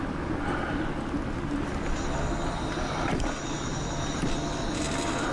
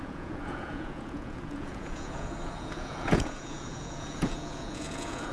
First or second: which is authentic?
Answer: first